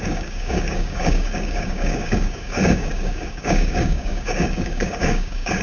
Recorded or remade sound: remade